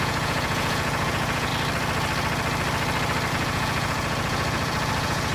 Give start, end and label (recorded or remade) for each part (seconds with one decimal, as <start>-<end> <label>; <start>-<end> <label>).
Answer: 0.0-1.5 remade; 1.5-3.3 recorded; 3.3-5.3 remade

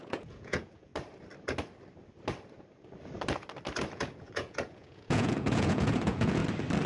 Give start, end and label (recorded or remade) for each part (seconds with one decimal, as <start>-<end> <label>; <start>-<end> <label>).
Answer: 0.0-0.9 remade; 0.9-3.9 recorded; 3.9-6.4 remade; 6.4-6.9 recorded

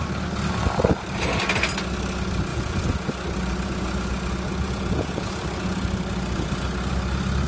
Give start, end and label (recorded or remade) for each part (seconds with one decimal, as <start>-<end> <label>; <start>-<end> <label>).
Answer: 0.0-2.5 recorded; 2.5-3.1 remade; 3.1-4.5 recorded; 4.5-5.4 remade; 5.4-7.5 recorded

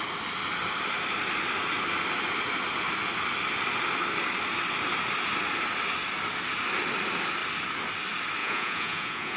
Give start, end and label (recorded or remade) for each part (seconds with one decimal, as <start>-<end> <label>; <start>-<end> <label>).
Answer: 0.0-8.4 recorded; 8.4-9.4 remade